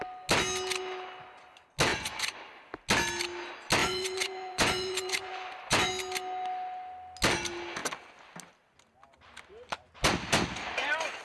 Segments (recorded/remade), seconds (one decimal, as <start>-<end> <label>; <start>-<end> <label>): 0.0-1.9 recorded; 1.9-2.4 remade; 2.4-3.8 recorded; 3.8-5.9 remade; 5.9-11.2 recorded